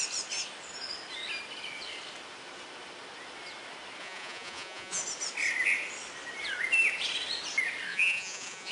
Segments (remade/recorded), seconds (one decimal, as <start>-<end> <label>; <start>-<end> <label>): 0.0-4.0 recorded; 4.0-5.0 remade; 5.0-7.9 recorded; 7.9-8.7 remade